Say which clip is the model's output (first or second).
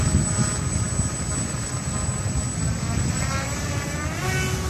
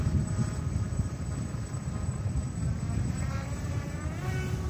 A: second